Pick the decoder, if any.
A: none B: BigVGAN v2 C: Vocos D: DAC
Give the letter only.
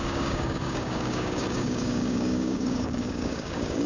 D